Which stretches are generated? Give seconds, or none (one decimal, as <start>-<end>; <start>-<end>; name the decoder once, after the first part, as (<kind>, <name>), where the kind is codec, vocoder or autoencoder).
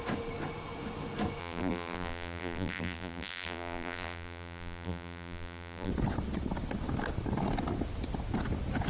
1.4-5.9 (vocoder, BigVGAN v2)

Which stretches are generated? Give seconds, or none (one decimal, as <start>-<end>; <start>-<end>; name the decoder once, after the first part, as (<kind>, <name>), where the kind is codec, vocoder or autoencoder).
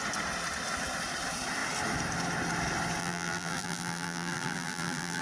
3.0-5.2 (vocoder, BigVGAN v2)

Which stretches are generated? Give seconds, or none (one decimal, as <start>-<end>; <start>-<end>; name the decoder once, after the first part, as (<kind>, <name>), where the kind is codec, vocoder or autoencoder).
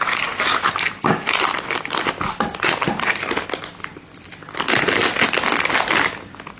none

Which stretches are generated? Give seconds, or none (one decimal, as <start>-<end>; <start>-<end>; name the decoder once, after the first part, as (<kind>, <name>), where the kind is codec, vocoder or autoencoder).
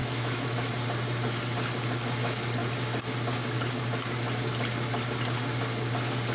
0.0-0.7 (autoencoder, DAC-VAE)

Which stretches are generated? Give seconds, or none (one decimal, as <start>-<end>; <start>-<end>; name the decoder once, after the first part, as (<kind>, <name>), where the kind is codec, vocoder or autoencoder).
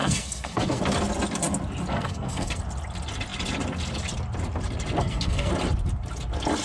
0.0-0.8 (codec, SNAC); 1.9-2.6; 5.0-5.5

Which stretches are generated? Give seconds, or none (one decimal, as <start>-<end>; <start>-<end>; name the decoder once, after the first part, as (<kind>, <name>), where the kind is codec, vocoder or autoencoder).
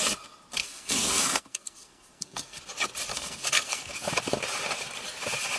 0.6-2.6 (codec, SNAC); 3.1-4.1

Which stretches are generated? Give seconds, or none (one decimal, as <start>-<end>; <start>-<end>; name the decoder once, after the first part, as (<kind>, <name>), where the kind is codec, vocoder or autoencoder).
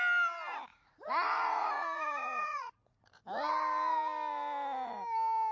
0.7-3.2 (vocoder, Vocos)